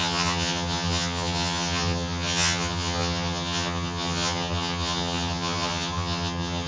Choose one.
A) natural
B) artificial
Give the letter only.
B